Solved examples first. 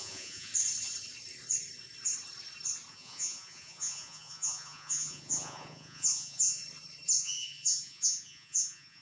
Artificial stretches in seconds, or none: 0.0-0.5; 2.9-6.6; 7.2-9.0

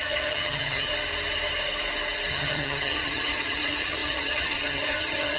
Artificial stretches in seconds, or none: 0.0-0.9; 2.3-5.4